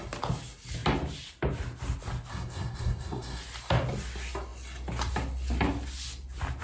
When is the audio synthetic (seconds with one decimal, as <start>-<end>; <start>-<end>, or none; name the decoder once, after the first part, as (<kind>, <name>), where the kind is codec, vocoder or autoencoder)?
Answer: 2.3-3.4 (codec, SNAC)